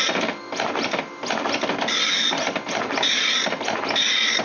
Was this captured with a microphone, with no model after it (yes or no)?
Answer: yes